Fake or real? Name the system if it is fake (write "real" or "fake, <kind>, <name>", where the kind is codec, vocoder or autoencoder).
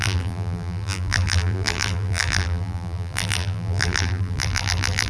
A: fake, vocoder, BigVGAN v2